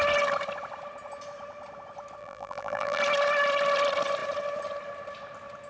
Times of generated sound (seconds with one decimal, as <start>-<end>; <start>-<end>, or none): 2.2-3.0